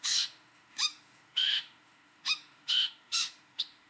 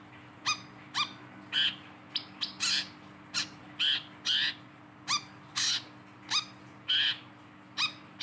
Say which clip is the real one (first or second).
second